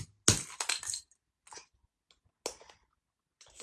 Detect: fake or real real